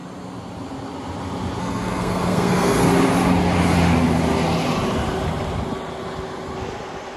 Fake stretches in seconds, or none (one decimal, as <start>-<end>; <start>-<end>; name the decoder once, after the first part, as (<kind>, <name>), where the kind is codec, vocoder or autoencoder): 1.6-2.9 (codec, SNAC)